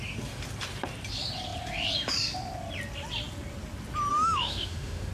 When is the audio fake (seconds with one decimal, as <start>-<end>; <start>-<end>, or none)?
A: 4.1-5.1

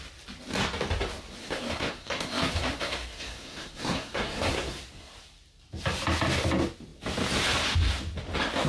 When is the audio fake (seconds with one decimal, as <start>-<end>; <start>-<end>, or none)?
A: 1.4-5.1